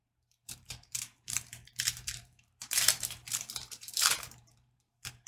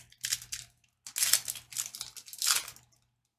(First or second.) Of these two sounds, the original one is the second